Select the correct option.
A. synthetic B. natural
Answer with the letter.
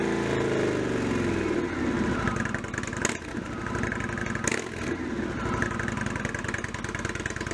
B